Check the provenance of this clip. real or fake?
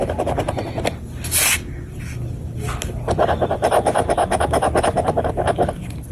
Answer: real